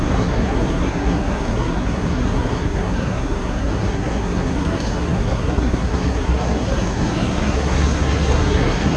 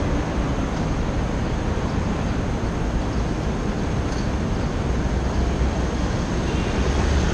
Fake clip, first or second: first